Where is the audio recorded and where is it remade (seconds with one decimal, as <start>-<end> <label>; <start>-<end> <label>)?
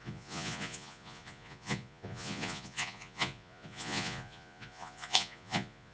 0.0-5.9 remade